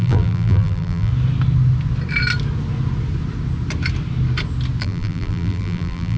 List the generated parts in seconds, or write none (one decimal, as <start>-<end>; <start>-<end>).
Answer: 0.0-1.1; 4.8-6.2